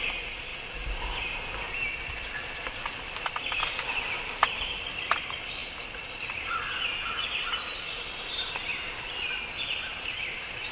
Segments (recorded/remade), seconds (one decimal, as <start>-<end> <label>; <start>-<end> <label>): 0.0-0.5 remade; 0.5-1.2 recorded; 1.2-10.7 remade